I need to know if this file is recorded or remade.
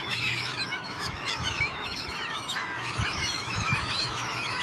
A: remade